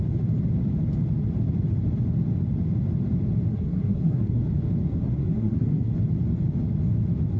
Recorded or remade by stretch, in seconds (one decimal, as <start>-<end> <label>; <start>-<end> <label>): 0.0-3.5 recorded; 3.5-4.4 remade; 4.4-4.9 recorded; 4.9-5.9 remade; 5.9-7.4 recorded